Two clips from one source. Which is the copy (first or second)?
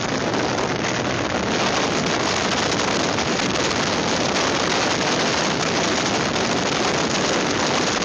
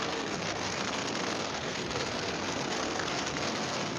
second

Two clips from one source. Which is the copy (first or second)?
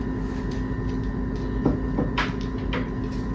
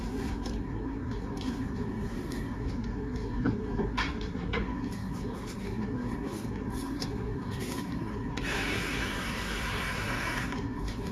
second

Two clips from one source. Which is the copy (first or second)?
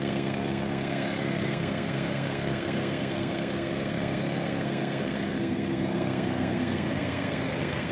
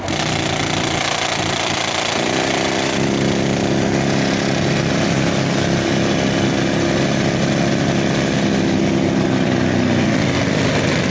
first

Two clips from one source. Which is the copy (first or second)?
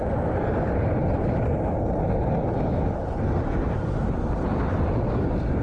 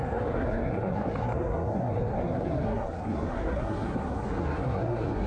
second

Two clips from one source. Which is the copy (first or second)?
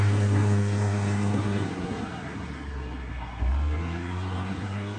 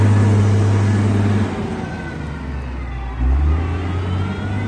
first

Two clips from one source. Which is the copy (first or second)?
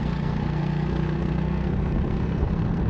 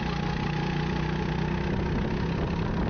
first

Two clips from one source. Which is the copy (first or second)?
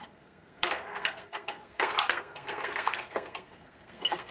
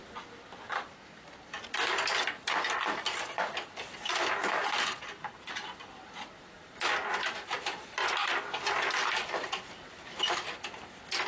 first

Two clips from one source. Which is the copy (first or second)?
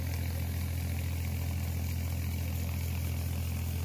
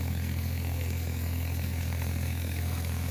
second